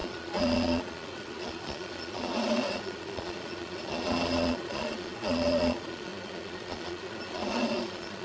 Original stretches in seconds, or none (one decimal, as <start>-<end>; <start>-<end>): none